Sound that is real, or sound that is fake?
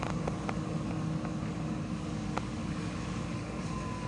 fake